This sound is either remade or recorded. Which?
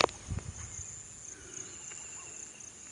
recorded